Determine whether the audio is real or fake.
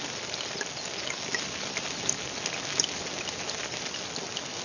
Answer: real